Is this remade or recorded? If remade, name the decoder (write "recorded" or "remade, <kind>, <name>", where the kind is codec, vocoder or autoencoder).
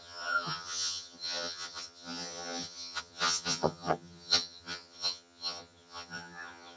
remade, vocoder, HiFi-GAN